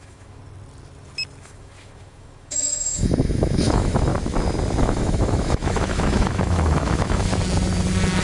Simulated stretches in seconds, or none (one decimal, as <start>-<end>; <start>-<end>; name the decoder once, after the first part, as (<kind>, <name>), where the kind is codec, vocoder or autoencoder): 0.0-0.4 (autoencoder, DAC-VAE); 1.4-4.1; 4.8-7.3